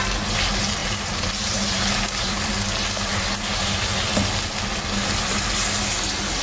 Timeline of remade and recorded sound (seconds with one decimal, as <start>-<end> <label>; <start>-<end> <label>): 0.0-0.8 recorded; 0.8-2.5 remade; 2.5-6.4 recorded